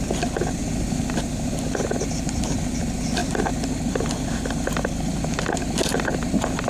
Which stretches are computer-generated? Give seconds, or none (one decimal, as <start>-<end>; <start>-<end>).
none